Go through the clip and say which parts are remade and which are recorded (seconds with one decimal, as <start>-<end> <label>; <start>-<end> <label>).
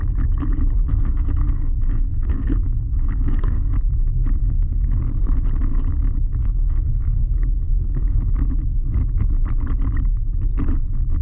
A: 0.0-0.9 recorded; 0.9-3.7 remade; 3.7-4.4 recorded; 4.4-5.0 remade; 5.0-6.4 recorded; 6.4-8.3 remade; 8.3-11.2 recorded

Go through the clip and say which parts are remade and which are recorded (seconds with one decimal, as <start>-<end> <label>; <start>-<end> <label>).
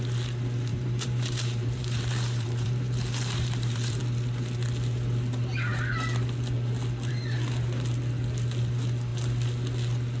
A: 0.0-0.7 recorded; 0.7-4.0 remade; 4.0-10.2 recorded